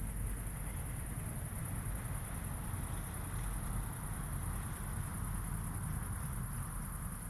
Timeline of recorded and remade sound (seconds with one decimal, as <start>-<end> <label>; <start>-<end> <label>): 0.0-7.3 recorded